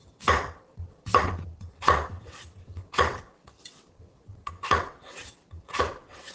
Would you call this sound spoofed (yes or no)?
yes